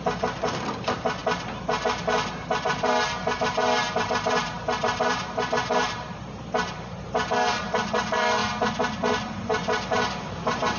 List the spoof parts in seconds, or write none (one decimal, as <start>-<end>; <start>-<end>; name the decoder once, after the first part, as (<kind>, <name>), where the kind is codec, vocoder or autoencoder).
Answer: 0.0-1.2 (vocoder, BigVGAN v2); 2.6-8.4; 9.2-9.6; 10.2-10.8